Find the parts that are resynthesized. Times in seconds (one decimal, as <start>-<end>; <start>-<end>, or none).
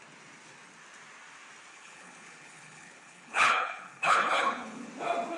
1.7-4.9